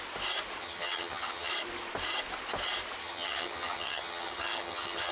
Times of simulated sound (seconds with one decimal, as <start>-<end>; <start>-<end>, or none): 0.6-1.5; 3.0-5.1

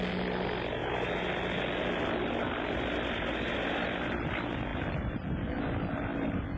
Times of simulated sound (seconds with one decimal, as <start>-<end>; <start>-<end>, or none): none

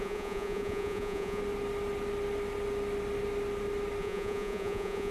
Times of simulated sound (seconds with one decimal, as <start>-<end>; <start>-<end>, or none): 0.0-1.4; 4.0-5.1

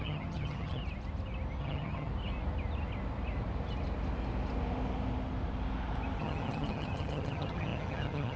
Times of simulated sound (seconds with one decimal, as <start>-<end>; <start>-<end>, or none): 0.0-0.8; 1.6-2.1; 6.2-8.4

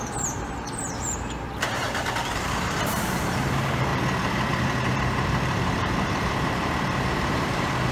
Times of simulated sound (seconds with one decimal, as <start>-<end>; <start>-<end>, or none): 0.0-3.9; 4.5-7.9

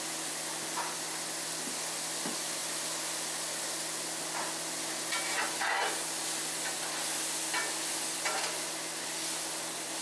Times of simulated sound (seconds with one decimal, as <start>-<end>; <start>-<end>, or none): none

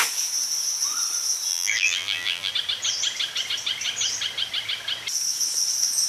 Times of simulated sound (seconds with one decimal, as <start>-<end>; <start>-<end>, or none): 1.5-2.5